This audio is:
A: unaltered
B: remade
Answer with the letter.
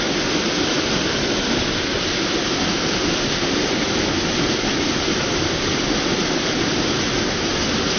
A